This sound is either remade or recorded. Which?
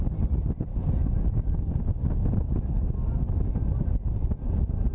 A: recorded